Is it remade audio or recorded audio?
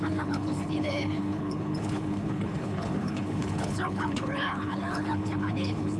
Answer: remade